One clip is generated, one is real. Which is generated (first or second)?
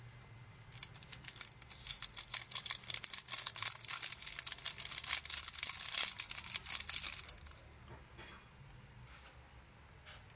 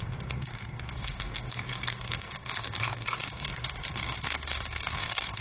second